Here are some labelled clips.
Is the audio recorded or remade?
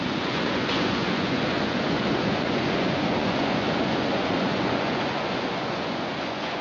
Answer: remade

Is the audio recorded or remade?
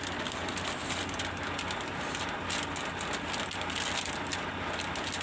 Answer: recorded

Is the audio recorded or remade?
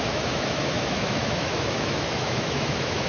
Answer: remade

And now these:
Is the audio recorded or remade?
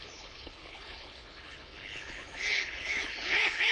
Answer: remade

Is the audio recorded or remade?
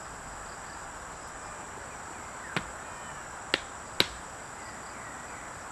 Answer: recorded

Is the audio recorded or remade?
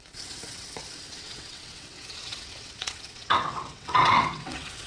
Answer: remade